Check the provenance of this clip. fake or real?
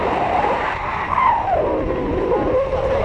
real